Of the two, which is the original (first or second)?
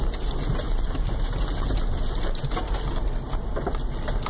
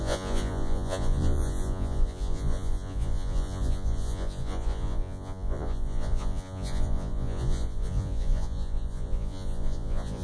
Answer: first